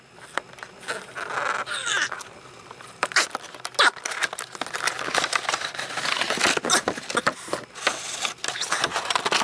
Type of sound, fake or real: real